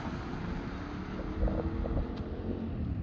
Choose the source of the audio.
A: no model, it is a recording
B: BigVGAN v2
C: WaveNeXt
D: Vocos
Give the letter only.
A